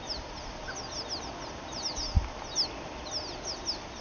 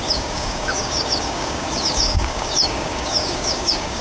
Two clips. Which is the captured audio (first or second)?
first